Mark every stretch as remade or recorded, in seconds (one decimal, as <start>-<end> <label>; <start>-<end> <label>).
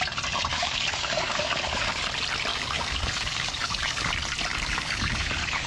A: 0.0-0.5 recorded; 0.5-2.0 remade; 2.0-2.5 recorded; 2.5-4.1 remade; 4.1-4.5 recorded; 4.5-5.7 remade